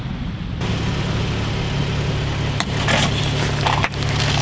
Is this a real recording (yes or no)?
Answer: yes